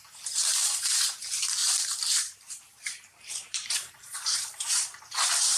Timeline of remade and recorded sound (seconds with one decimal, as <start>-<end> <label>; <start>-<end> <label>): 0.0-1.6 recorded; 1.6-5.0 remade; 5.0-5.6 recorded